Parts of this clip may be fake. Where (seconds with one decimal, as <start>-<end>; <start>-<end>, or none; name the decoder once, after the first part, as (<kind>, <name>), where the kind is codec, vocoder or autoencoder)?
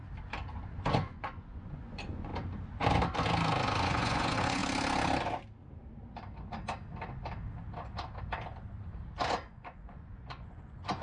0.9-2.3 (vocoder, Vocos); 3.8-4.6; 9.5-11.0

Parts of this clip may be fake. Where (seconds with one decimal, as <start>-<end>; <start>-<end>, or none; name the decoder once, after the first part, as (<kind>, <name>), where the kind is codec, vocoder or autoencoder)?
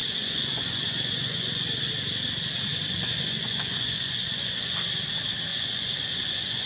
0.0-1.9 (vocoder, Vocos); 2.7-4.8; 5.5-6.7